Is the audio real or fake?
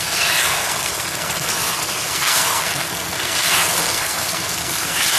fake